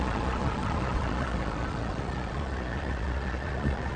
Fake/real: fake